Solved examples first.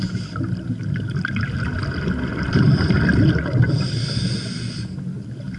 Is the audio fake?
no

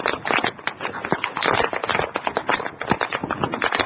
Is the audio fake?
no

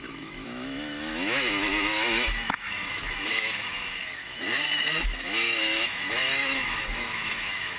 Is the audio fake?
yes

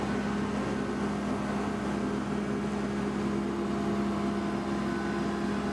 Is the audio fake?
no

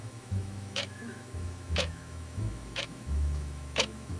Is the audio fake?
yes